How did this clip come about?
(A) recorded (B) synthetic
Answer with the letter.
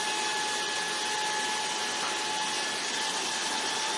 A